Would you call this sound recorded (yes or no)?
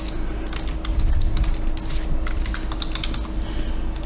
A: yes